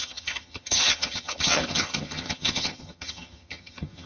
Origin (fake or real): fake